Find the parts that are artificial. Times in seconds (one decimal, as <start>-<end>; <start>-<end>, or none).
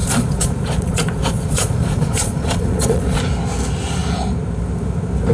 0.0-3.2